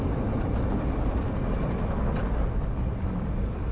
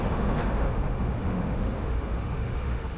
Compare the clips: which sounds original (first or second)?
first